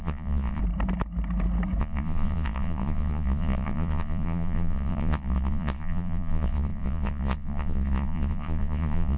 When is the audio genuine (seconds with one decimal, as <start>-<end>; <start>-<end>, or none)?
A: 0.6-1.8